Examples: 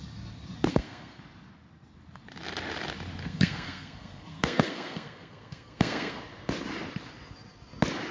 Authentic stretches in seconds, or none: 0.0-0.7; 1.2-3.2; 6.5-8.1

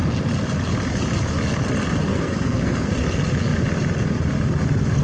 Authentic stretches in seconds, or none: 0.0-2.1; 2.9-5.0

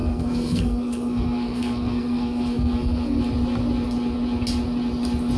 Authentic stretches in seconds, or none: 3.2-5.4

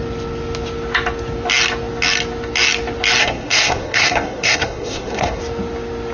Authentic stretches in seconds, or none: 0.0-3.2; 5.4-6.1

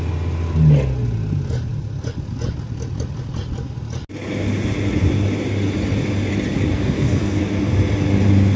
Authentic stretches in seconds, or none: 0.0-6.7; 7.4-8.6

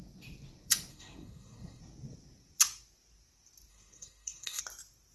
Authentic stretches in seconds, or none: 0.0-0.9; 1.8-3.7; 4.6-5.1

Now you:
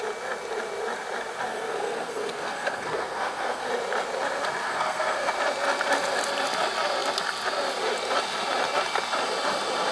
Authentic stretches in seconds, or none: 0.0-1.5; 3.7-4.6; 5.3-9.9

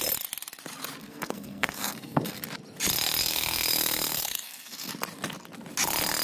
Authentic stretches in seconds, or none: 0.0-1.0; 2.4-3.2; 4.9-6.2